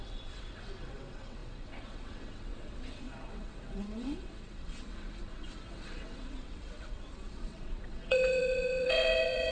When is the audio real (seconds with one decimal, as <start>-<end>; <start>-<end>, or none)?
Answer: none